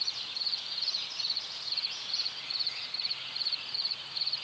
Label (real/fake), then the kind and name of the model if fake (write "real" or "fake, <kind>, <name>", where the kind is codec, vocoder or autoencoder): fake, vocoder, Vocos